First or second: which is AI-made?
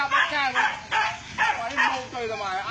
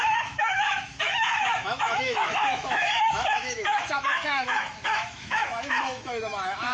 second